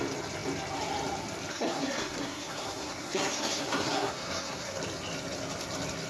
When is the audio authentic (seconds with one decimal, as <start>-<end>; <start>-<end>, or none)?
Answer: 0.0-1.5; 4.8-6.1